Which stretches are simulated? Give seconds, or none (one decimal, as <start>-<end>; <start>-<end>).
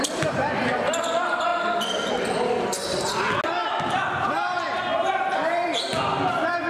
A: 0.0-1.5; 3.7-4.9; 5.5-6.7